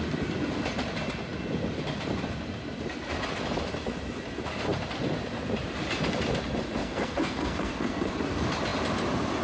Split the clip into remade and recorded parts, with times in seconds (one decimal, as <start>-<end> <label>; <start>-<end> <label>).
0.0-6.8 recorded; 6.8-8.1 remade; 8.1-9.4 recorded